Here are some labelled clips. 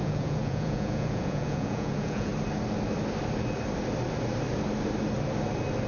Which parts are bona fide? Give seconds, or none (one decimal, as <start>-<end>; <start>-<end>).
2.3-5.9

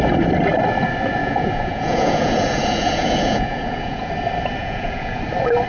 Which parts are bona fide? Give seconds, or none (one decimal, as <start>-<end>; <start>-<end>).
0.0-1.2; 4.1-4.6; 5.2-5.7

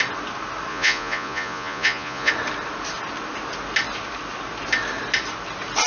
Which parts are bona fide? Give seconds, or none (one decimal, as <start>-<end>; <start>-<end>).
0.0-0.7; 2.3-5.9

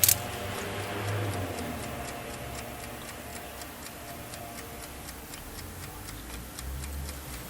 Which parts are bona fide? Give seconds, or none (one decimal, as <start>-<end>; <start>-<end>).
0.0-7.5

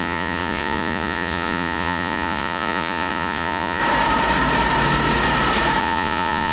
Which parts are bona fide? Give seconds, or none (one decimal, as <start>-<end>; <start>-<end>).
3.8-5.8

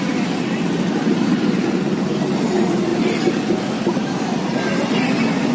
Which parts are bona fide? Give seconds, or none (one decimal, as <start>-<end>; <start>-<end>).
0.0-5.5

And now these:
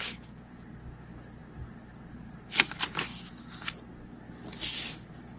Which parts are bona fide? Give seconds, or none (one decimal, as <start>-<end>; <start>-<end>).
0.0-5.4